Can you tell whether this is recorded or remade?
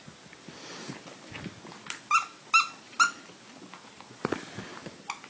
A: recorded